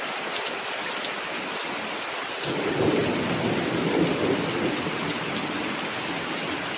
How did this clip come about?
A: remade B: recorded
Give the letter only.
B